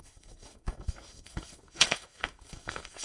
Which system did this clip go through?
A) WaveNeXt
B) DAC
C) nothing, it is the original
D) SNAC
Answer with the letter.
D